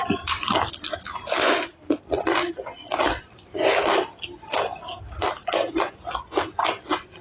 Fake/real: real